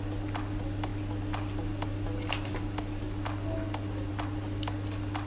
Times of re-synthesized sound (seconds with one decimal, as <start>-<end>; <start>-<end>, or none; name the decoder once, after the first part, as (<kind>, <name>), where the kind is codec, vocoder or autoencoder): none